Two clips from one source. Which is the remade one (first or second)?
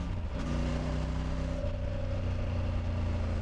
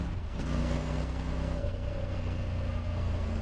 second